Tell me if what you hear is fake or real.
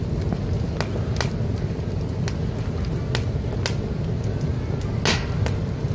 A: real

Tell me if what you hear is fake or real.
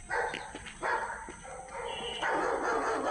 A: real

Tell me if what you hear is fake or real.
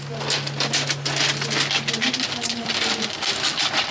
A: real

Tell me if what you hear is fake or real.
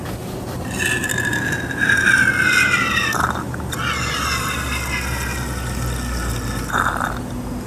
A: real